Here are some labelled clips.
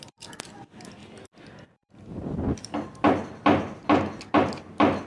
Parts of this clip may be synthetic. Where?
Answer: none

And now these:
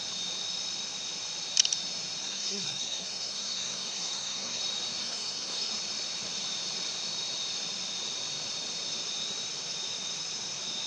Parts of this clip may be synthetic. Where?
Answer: 2.2-4.6 (codec, SNAC); 5.0-5.7